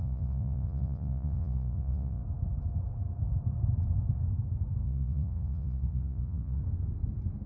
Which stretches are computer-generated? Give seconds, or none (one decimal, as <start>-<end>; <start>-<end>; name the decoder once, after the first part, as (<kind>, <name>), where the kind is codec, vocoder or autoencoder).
0.0-2.2 (vocoder, Vocos); 4.8-6.6

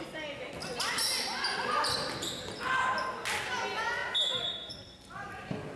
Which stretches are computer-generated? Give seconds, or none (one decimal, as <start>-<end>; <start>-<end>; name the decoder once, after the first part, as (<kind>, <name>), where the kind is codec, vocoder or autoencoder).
none

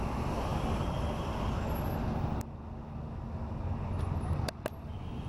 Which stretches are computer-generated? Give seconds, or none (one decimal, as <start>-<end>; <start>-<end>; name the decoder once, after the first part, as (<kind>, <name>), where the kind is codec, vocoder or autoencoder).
none

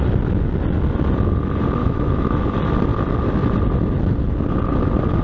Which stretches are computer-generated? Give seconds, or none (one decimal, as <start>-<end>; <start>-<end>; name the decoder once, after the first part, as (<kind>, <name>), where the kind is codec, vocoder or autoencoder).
1.8-2.4 (autoencoder, DAC-VAE)

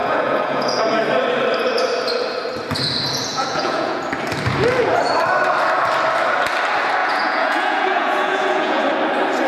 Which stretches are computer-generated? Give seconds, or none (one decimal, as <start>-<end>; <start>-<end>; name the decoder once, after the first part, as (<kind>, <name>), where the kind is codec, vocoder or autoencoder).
0.0-0.8 (vocoder, Vocos); 3.3-4.0; 7.0-8.8

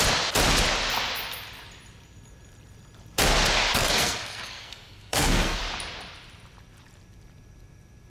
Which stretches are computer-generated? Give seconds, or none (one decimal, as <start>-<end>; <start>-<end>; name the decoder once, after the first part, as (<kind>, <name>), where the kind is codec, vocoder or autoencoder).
3.7-5.6 (codec, SNAC)

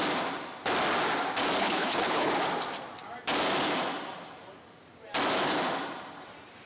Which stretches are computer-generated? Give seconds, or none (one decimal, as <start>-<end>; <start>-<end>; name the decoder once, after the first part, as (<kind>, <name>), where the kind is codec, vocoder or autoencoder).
1.6-2.3 (codec, HILCodec)

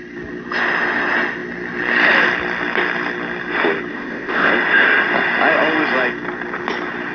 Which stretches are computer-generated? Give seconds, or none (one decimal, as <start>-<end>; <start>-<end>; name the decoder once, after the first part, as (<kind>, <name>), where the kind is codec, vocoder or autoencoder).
3.9-4.5 (codec, ZipCodec)